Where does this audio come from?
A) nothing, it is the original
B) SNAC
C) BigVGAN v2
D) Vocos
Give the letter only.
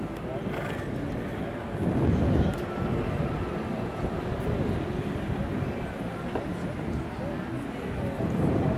A